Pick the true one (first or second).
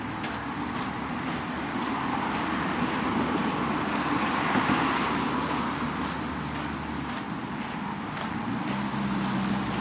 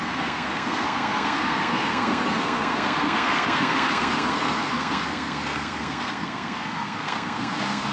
first